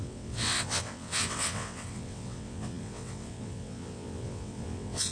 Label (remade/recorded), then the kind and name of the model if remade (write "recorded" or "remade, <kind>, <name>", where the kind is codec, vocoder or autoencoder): remade, vocoder, WaveNeXt